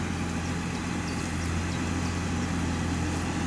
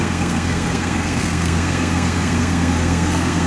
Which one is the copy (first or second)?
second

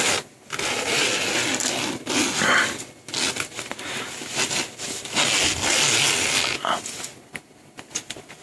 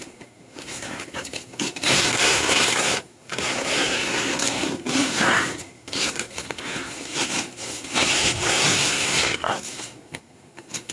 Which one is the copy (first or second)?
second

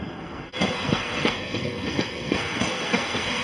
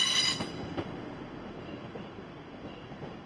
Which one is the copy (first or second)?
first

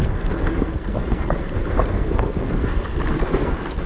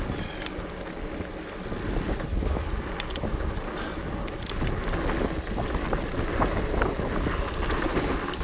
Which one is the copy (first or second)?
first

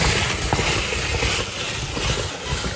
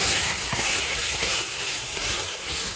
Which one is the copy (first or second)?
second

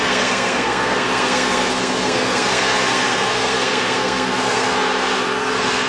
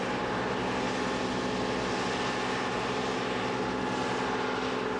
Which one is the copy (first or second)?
first